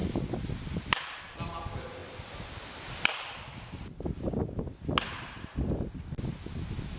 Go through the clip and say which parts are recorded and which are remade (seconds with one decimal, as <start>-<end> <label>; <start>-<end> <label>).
0.0-7.0 recorded